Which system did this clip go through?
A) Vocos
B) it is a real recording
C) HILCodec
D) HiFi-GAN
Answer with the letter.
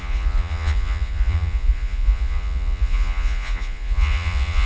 A